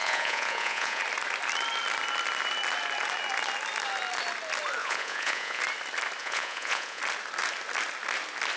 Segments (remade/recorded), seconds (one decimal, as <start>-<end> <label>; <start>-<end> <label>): 0.0-1.0 remade; 1.0-4.8 recorded; 4.8-5.6 remade; 5.6-6.2 recorded; 6.2-7.0 remade; 7.0-8.6 recorded